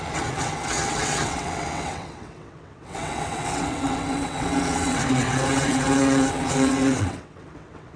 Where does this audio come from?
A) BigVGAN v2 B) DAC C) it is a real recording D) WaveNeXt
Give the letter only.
D